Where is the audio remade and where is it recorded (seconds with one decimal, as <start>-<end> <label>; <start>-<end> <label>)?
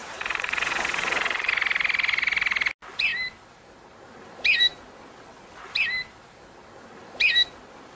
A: 0.0-1.5 remade; 1.5-8.0 recorded